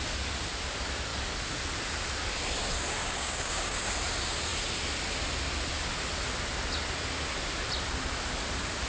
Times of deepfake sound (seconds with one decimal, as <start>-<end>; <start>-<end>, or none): 3.0-3.9